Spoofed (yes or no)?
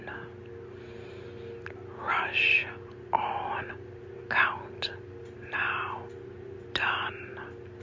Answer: no